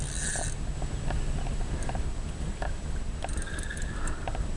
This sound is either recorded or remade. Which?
recorded